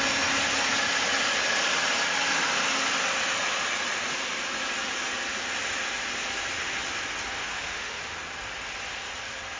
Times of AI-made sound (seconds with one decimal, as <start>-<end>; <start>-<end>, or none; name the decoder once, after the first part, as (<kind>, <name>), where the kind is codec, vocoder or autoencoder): 7.4-8.0 (autoencoder, DAC-VAE)